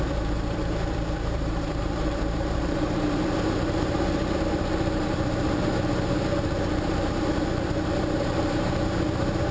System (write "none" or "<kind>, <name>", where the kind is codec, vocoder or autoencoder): vocoder, BigVGAN v2